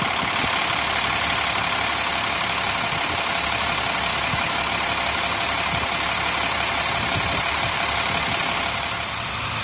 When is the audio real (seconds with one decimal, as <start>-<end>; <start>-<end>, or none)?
0.0-4.1; 4.7-9.6